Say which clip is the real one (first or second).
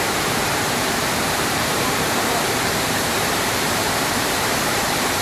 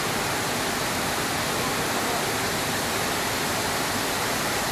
second